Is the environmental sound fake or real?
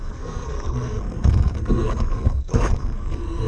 fake